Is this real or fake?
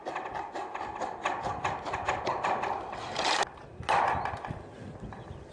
real